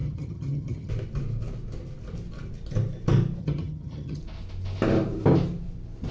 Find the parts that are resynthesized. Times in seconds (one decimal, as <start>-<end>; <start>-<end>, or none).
0.0-0.9; 3.4-4.2